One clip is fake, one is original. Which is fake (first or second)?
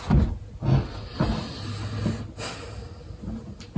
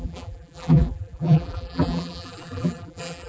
second